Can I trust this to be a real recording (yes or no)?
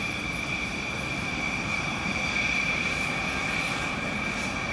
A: no